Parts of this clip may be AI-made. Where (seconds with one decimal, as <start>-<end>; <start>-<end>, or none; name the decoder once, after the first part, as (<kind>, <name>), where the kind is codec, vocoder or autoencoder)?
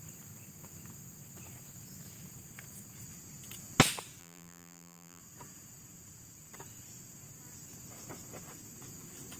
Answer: 4.2-5.2 (vocoder, BigVGAN v2)